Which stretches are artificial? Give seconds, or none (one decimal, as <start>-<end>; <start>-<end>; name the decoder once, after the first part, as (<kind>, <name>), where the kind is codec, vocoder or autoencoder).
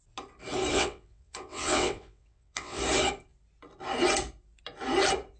0.7-2.8 (vocoder, WaveNeXt)